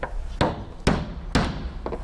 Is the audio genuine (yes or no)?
yes